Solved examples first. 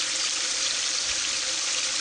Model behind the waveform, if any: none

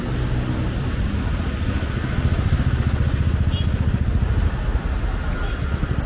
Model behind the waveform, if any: none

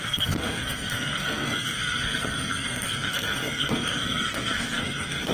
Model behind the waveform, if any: codec, SNAC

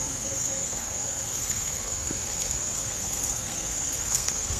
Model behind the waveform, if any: codec, SNAC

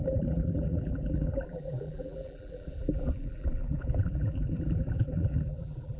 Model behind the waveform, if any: vocoder, BigVGAN v2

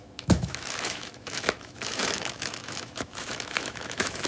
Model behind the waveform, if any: autoencoder, DAC-VAE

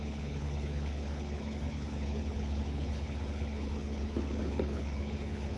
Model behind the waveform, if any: codec, HILCodec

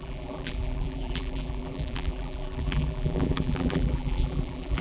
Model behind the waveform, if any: vocoder, BigVGAN v2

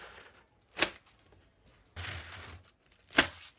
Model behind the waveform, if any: none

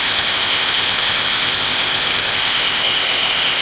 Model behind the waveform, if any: codec, ZipCodec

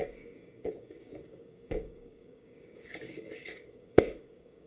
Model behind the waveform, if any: codec, DAC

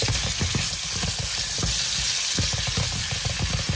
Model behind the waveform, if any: none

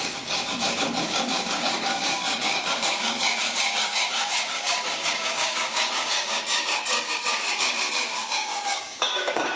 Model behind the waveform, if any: codec, DAC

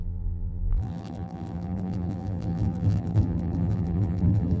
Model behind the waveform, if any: vocoder, BigVGAN v2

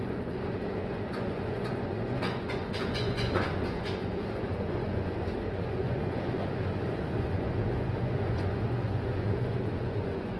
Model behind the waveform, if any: vocoder, Vocos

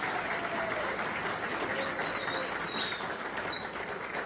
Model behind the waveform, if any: none